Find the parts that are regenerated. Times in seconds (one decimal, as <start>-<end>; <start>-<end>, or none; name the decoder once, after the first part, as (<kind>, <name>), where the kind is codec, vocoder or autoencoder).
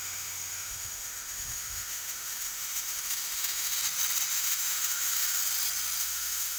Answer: 0.0-3.8 (autoencoder, DAC-VAE); 4.3-5.4; 6.0-6.6